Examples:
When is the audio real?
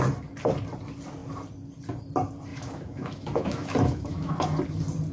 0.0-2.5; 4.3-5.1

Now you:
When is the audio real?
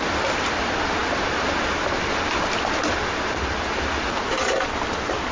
0.0-5.3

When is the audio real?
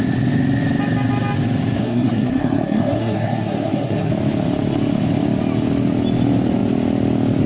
0.0-1.8; 4.1-7.5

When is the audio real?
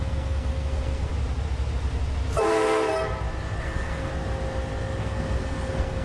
1.1-2.5; 2.9-3.6; 4.1-5.0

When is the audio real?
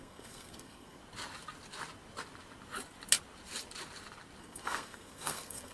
1.0-4.4